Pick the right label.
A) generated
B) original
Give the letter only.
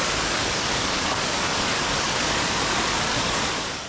A